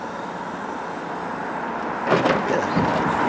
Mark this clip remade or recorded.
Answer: recorded